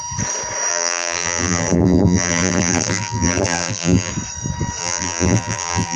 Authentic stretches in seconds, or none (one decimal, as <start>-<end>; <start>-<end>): 0.0-0.7; 4.1-4.8